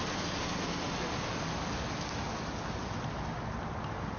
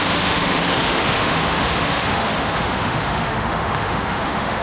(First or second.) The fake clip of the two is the second